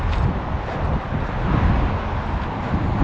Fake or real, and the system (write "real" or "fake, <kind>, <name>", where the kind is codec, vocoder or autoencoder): real